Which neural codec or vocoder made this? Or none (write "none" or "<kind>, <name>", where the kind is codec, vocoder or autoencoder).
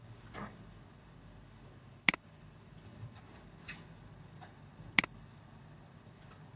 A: none